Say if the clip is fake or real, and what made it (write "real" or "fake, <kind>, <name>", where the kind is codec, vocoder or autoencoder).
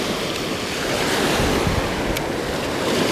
real